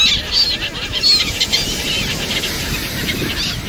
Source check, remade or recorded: recorded